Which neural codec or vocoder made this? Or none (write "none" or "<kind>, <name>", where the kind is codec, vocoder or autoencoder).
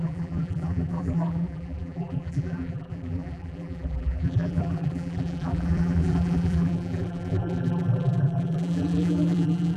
vocoder, BigVGAN v2